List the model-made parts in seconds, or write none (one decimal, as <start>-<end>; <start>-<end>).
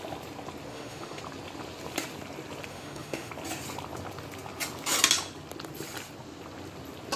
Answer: 0.7-1.2; 2.7-3.3